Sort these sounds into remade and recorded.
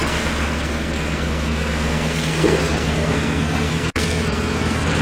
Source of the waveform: remade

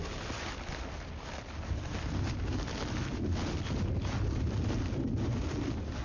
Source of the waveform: recorded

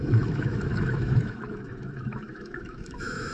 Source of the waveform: remade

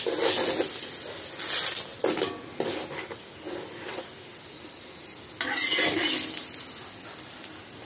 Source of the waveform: recorded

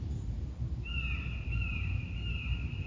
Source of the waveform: remade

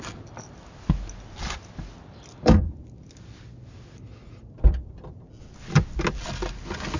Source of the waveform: recorded